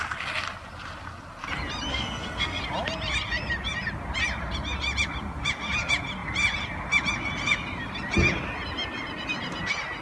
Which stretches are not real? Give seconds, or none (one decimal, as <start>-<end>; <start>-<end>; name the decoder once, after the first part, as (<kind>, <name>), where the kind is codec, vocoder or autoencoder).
1.9-2.6 (codec, SNAC)

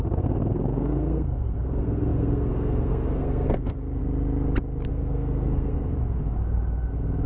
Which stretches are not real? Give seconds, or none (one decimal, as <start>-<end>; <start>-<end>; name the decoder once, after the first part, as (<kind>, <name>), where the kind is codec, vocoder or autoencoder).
0.0-4.0 (codec, SNAC); 4.9-5.9

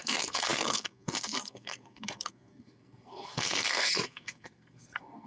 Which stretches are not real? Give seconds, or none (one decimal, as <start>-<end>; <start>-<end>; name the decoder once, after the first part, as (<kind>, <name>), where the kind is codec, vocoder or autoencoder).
0.0-5.3 (codec, SNAC)

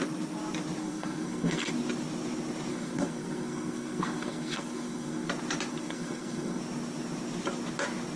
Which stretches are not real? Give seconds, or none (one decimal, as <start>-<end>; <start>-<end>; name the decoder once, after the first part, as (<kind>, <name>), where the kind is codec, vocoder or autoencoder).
0.8-1.7 (codec, SNAC); 2.7-5.3; 5.7-6.6

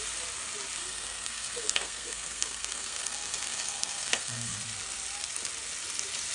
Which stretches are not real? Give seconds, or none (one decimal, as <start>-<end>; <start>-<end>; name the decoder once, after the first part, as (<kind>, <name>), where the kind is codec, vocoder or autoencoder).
0.8-4.6 (codec, SNAC)